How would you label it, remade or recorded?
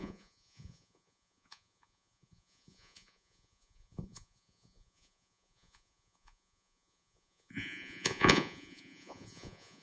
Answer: remade